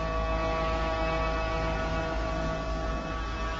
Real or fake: real